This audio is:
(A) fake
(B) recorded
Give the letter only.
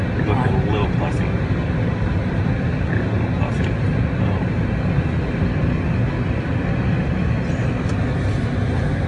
B